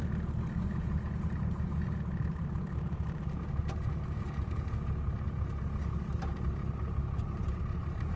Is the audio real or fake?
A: real